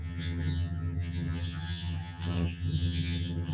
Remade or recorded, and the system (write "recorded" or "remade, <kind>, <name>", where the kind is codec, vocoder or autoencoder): remade, vocoder, HiFi-GAN